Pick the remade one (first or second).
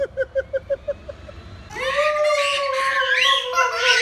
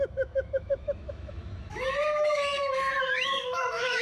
second